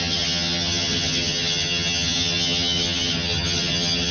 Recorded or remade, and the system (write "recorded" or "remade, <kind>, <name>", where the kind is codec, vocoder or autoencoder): remade, vocoder, HiFi-GAN